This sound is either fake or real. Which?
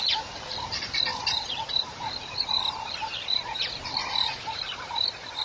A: fake